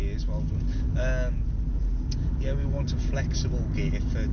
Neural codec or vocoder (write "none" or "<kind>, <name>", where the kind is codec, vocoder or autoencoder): none